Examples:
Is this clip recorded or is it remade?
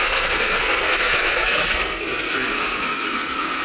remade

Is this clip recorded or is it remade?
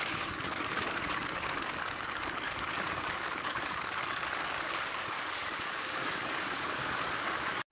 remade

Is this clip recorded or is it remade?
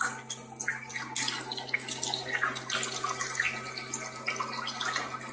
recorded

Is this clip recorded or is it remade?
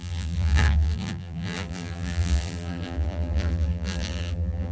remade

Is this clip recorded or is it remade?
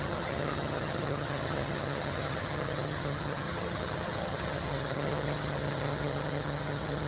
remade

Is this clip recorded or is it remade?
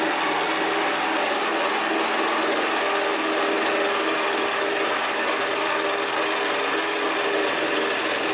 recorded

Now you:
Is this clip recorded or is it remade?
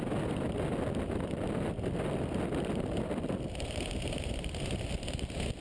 recorded